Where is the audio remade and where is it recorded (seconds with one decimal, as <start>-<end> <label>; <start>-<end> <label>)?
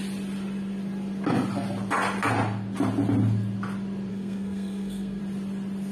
0.0-4.1 recorded; 4.1-5.2 remade; 5.2-5.9 recorded